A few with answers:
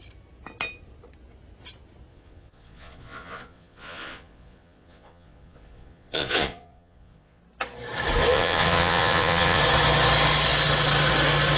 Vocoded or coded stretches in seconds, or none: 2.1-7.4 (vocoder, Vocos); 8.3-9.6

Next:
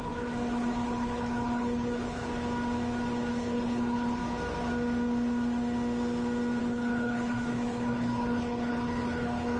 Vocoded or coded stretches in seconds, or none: 0.0-2.3 (codec, HILCodec); 3.3-4.2; 6.6-9.6